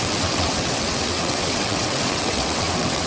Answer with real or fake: fake